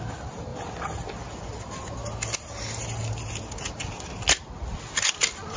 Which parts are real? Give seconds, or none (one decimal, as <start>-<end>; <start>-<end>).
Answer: 0.0-5.6